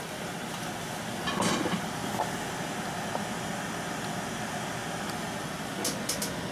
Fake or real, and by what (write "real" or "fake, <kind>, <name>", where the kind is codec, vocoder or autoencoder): real